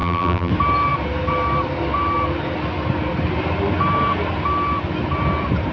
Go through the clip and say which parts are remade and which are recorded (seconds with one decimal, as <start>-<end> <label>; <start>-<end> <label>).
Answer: 0.0-0.5 remade; 0.5-5.7 recorded